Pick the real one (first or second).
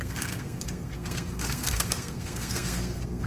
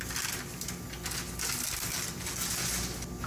second